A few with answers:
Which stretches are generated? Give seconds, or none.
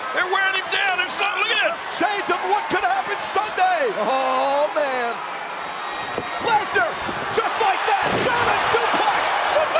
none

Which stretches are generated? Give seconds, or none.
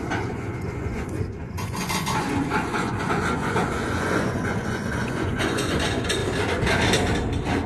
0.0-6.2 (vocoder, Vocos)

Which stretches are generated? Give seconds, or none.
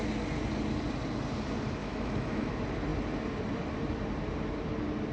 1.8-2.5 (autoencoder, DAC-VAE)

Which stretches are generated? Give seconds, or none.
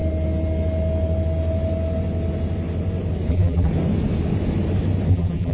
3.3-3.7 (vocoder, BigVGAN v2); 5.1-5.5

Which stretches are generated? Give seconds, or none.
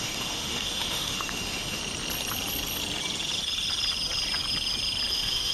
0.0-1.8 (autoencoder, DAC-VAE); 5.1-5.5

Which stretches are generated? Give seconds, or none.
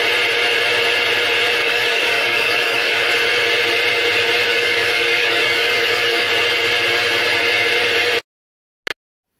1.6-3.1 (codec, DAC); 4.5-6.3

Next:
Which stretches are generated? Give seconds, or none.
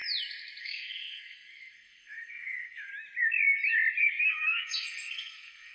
0.6-2.9 (codec, SNAC); 4.0-5.7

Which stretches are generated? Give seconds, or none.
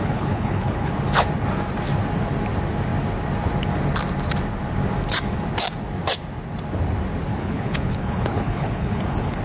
0.0-0.9 (codec, HILCodec); 7.3-9.4